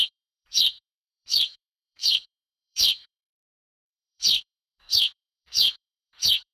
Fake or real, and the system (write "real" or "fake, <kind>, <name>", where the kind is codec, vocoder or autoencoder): fake, codec, SNAC